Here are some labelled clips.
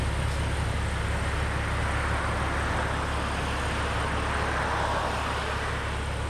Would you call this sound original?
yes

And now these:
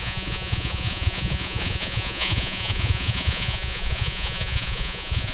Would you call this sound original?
no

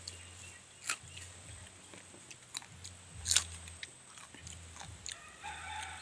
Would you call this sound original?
yes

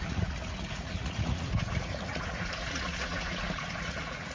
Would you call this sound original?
no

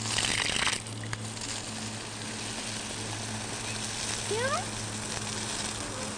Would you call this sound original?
yes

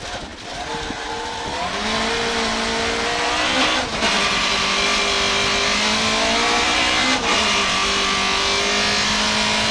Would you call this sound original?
yes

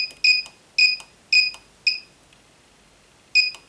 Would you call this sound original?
yes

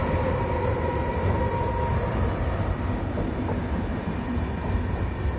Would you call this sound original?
yes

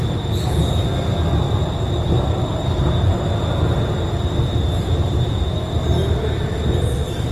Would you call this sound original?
yes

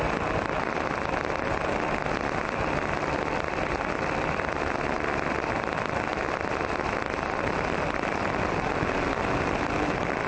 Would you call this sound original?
yes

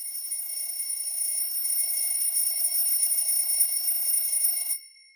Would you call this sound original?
no